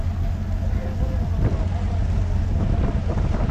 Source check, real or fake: real